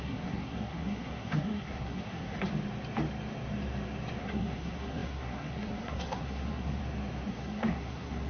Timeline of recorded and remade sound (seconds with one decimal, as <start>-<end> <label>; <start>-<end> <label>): 0.0-2.5 remade; 2.5-4.2 recorded; 4.2-6.8 remade; 6.8-7.3 recorded; 7.3-8.3 remade